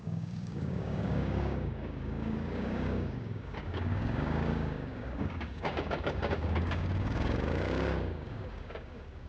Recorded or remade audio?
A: remade